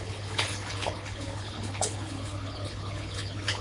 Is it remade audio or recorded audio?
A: remade